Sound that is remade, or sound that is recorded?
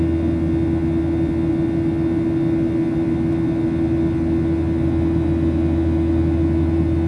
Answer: recorded